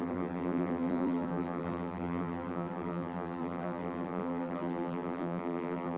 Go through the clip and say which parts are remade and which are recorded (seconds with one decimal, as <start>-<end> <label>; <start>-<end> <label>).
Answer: 0.0-6.0 remade